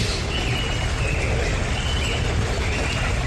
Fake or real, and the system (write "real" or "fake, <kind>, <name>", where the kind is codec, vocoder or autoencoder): real